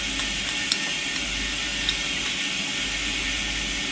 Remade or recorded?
recorded